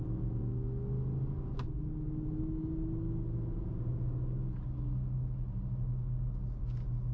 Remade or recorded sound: recorded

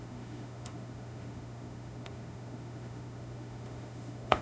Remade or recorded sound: remade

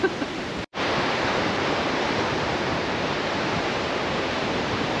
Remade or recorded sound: remade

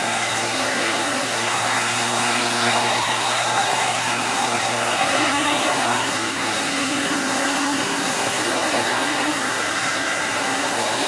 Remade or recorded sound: remade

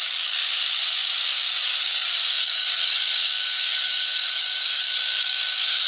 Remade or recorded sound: remade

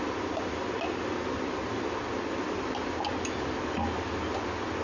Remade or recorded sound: recorded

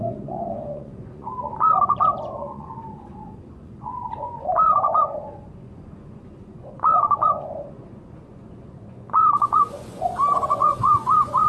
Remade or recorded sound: remade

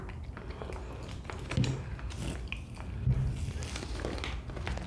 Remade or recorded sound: recorded